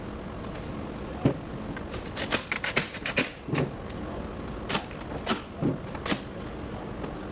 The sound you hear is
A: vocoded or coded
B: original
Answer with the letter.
B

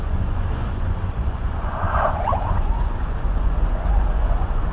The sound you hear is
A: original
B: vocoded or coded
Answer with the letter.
B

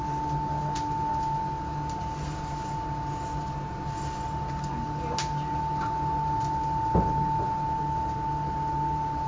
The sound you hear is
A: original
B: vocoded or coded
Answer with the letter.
A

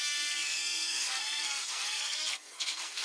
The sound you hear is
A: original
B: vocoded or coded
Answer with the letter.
B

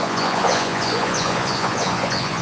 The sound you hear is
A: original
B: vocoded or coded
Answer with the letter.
B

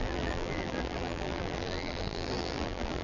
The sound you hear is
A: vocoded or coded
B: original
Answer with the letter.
A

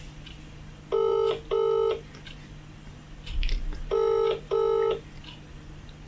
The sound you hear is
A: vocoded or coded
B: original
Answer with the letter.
B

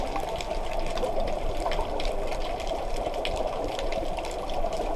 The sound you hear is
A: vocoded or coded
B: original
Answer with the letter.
B